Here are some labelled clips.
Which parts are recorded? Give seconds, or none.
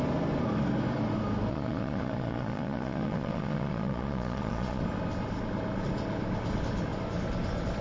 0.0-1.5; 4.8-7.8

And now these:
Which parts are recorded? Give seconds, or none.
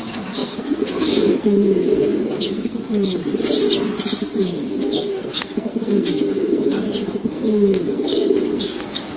3.2-4.4